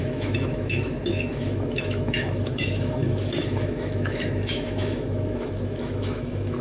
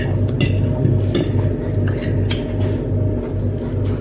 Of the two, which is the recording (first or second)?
second